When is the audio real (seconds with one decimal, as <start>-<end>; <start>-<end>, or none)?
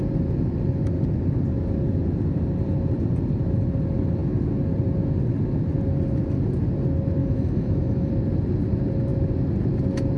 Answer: 0.0-7.2; 8.1-10.2